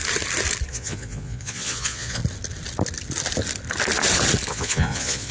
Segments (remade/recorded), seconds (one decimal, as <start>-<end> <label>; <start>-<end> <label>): 0.0-0.7 recorded; 0.7-2.2 remade; 2.2-4.5 recorded; 4.5-5.3 remade